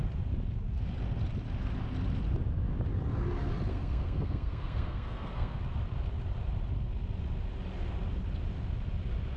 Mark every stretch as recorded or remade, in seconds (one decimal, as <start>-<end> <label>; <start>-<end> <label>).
0.0-3.7 recorded; 3.7-5.6 remade; 5.6-9.4 recorded